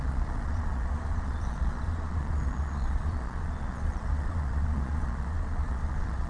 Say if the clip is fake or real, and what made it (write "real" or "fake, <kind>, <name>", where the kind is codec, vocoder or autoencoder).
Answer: fake, vocoder, Vocos